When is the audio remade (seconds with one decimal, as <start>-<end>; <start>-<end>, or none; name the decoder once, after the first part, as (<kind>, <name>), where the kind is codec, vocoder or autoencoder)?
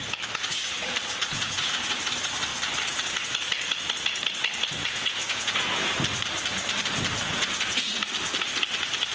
1.3-2.0 (vocoder, Vocos); 4.8-5.9; 7.3-7.9